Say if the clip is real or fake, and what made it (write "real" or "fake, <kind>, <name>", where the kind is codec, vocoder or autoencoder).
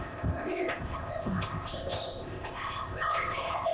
fake, codec, ZipCodec